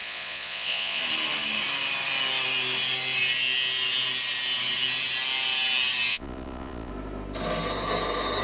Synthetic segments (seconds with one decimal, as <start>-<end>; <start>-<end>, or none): 0.0-1.0; 6.1-6.9